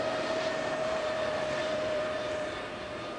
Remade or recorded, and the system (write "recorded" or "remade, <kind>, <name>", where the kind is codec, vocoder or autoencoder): remade, vocoder, BigVGAN v2